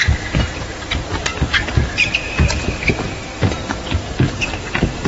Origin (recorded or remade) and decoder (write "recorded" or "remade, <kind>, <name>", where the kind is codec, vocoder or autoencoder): remade, vocoder, BigVGAN v2